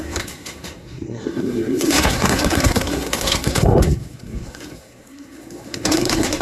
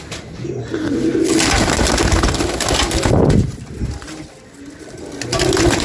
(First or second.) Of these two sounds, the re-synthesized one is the first